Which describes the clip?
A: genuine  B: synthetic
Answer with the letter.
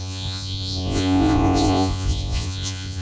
B